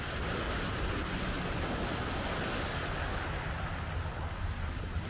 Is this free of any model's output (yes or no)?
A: yes